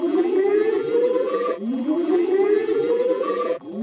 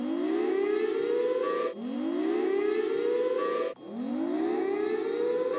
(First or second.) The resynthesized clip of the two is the first